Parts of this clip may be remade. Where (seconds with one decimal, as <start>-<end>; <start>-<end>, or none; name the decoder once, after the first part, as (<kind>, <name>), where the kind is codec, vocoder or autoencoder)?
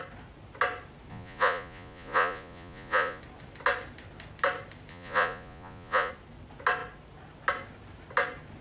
1.1-3.2 (vocoder, Vocos); 4.9-6.1